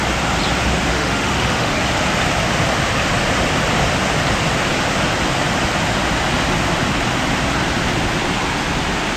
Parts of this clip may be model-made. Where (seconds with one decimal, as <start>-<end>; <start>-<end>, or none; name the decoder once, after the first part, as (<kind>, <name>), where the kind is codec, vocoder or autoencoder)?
0.9-1.8 (autoencoder, DAC-VAE)